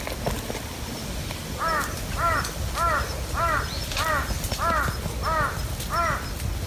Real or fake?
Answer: real